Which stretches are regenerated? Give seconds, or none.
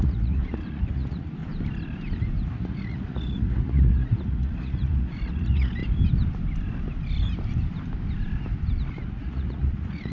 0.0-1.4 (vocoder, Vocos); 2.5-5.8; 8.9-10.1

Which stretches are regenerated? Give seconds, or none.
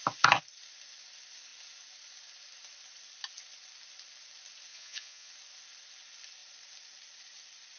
4.7-5.3 (vocoder, Vocos)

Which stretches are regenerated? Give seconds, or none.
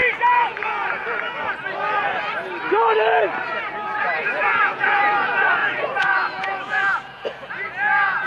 0.0-0.9 (vocoder, Vocos); 4.2-5.0; 5.6-8.3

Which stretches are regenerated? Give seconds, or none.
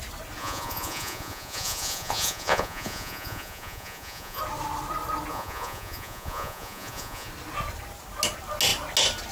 0.4-4.4 (vocoder, Vocos); 5.3-7.3